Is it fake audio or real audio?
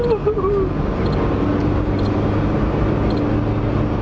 real